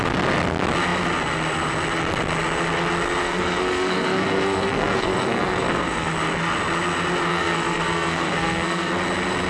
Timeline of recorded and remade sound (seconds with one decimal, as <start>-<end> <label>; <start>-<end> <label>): 0.0-3.2 recorded; 3.2-6.1 remade; 6.1-7.3 recorded; 7.3-8.9 remade; 8.9-9.5 recorded